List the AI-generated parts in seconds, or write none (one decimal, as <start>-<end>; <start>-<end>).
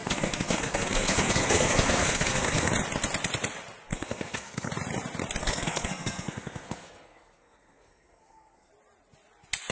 0.0-2.7; 3.9-4.7; 5.4-8.7